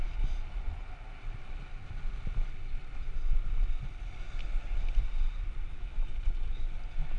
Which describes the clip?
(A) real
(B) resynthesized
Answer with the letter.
A